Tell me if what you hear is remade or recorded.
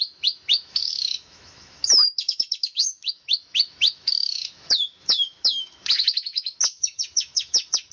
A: remade